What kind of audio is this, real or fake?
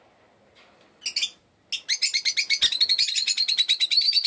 real